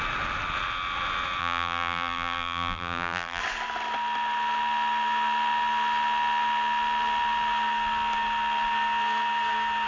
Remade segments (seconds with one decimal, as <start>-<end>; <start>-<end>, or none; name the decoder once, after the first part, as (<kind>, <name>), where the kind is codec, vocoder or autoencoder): 1.4-3.4 (vocoder, BigVGAN v2)